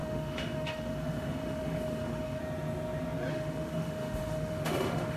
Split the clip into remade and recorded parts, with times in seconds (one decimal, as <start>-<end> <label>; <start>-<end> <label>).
0.0-2.4 remade; 2.4-3.3 recorded; 3.3-5.2 remade